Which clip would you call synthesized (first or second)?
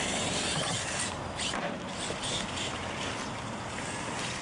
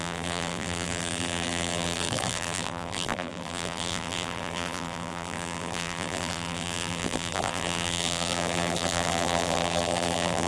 second